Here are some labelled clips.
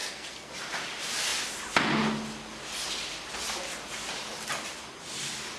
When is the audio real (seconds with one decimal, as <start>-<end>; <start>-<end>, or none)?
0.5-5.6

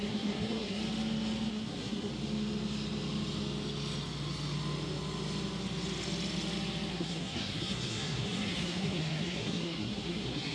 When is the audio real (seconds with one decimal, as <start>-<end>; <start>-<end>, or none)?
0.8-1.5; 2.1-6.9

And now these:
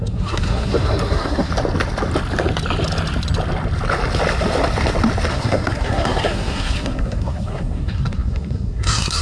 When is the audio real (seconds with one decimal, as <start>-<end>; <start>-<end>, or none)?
1.5-5.3

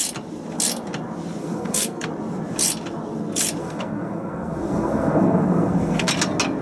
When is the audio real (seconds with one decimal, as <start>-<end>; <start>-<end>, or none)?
0.0-1.4; 2.1-3.6; 6.1-6.6

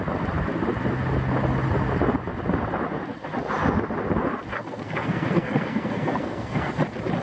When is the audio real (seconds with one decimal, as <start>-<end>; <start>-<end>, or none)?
0.0-4.5; 6.7-7.2

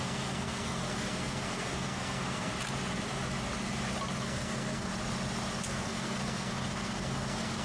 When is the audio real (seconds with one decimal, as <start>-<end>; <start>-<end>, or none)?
2.5-4.2; 4.9-5.6

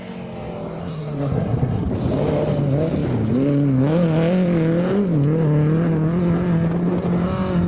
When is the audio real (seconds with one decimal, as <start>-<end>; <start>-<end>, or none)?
0.0-0.8; 1.9-7.7